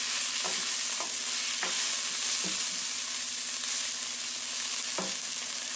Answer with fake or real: real